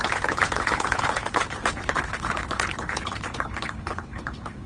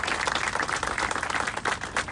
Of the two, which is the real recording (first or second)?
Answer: second